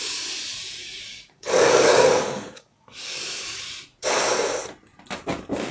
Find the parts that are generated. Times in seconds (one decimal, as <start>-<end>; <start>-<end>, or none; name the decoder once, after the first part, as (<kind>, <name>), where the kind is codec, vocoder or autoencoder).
0.8-3.6 (codec, DAC)

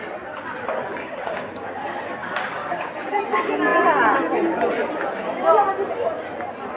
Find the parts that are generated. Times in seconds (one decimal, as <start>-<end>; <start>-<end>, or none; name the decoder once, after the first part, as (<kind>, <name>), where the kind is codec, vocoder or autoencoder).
1.0-1.7 (codec, DAC); 2.2-2.9

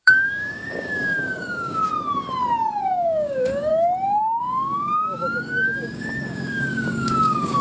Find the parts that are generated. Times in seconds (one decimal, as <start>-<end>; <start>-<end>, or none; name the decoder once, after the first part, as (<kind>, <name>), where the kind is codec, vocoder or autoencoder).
0.0-1.8 (codec, DAC); 2.8-3.7; 4.4-7.6

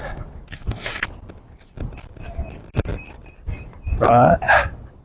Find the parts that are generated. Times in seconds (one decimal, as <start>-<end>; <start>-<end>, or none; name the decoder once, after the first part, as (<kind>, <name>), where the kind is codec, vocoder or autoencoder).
0.5-1.0 (codec, DAC)

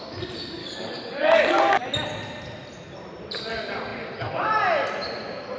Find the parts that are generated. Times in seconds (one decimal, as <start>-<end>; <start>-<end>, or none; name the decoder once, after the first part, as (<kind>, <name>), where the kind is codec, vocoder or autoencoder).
0.6-1.8 (codec, DAC)

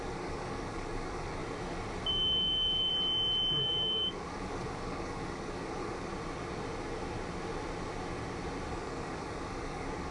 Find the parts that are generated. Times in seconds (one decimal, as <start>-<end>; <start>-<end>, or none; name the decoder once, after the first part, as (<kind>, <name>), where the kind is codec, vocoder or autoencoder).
0.0-1.4 (codec, DAC); 2.1-2.9; 3.6-6.1; 8.7-10.1

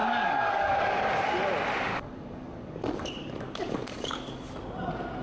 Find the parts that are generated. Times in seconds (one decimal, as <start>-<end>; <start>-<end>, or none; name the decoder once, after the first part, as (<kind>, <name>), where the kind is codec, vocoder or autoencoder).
0.0-1.1 (codec, DAC); 1.9-4.5